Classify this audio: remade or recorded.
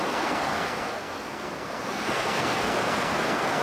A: remade